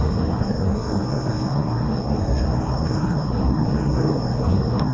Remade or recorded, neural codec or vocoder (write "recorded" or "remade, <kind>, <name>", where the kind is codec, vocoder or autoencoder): remade, codec, SNAC